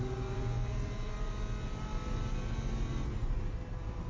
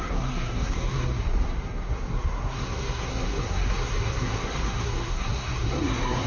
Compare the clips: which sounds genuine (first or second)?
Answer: first